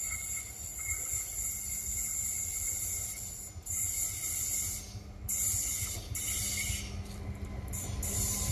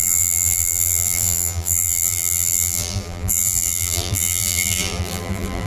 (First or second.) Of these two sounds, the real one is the first